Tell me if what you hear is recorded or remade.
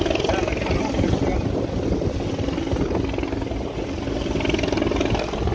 recorded